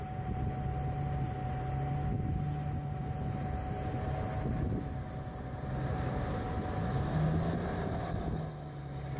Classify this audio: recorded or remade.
recorded